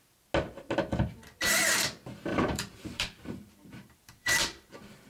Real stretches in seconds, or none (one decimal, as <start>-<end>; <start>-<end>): 0.0-2.3